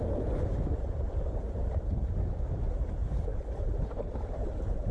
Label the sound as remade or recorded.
recorded